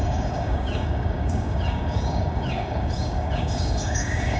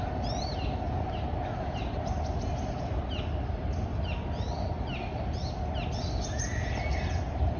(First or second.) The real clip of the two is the second